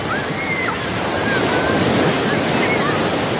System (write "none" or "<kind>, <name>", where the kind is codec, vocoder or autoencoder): none